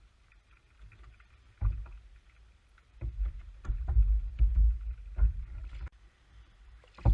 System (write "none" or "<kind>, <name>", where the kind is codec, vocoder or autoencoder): none